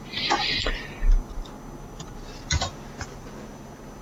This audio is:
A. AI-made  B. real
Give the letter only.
B